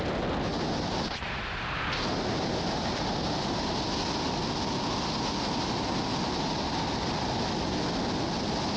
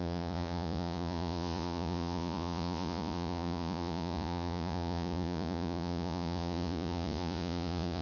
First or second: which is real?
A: first